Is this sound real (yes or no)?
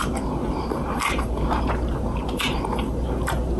no